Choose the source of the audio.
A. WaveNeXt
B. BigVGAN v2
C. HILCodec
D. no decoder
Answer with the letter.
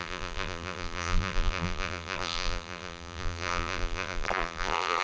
B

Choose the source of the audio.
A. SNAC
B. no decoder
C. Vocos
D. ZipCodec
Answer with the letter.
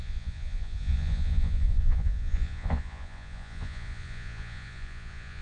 C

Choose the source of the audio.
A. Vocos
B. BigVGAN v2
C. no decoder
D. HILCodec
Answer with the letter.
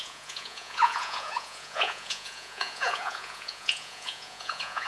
A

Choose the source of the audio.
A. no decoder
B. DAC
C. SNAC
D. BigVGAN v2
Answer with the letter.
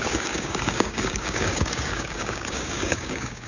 B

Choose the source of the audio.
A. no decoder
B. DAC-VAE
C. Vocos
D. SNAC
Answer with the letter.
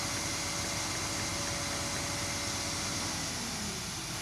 A